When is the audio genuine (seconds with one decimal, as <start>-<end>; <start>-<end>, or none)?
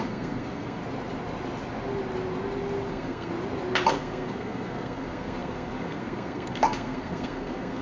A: 0.8-2.9; 3.3-3.9